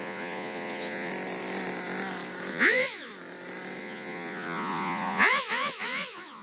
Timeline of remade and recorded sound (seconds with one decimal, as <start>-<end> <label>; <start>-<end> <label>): 0.0-1.1 remade; 1.1-2.5 recorded; 2.5-3.1 remade; 3.1-3.8 recorded; 3.8-6.4 remade